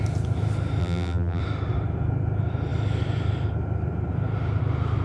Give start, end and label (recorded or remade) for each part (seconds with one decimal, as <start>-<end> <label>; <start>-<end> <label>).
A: 0.0-0.8 recorded; 0.8-1.4 remade; 1.4-5.0 recorded